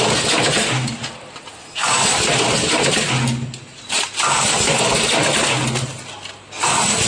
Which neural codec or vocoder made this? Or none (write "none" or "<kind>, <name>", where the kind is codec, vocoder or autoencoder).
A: none